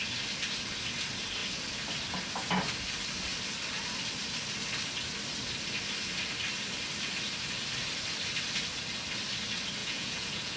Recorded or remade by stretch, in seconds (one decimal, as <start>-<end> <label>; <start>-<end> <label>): 0.0-9.8 recorded; 9.8-10.6 remade